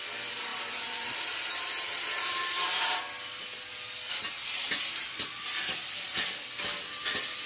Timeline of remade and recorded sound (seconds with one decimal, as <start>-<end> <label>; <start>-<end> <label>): 0.0-0.5 recorded; 0.5-3.0 remade; 3.0-4.4 recorded; 4.4-6.3 remade; 6.3-7.5 recorded